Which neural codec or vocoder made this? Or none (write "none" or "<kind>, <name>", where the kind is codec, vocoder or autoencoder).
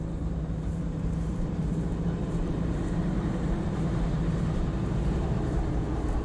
vocoder, BigVGAN v2